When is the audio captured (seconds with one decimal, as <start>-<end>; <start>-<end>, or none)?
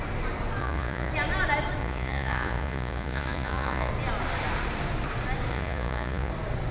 0.0-0.6; 1.1-1.8; 3.9-5.5; 6.3-6.7